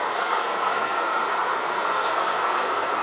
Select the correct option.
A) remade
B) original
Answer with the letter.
A